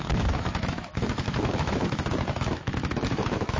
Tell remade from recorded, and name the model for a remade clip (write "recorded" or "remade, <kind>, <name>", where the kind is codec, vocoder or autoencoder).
remade, autoencoder, DAC-VAE